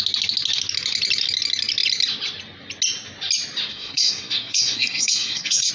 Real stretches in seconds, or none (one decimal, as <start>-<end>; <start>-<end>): 0.0-3.7